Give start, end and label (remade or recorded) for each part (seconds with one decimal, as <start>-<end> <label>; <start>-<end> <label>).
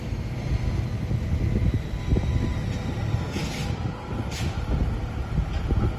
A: 0.0-3.4 recorded; 3.4-4.1 remade; 4.1-6.0 recorded